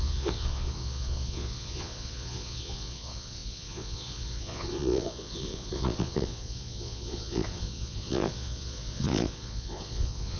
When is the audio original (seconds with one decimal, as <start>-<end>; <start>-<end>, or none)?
none